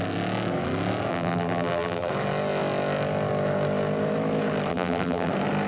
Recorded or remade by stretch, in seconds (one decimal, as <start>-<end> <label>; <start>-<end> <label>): 0.0-1.1 recorded; 1.1-2.1 remade; 2.1-4.7 recorded; 4.7-5.3 remade; 5.3-5.7 recorded